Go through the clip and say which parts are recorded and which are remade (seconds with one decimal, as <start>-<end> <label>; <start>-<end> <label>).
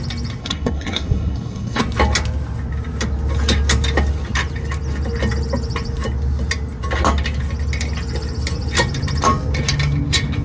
0.0-0.4 recorded; 0.4-1.8 remade; 1.8-10.4 recorded